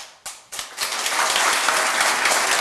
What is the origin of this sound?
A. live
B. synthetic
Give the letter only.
A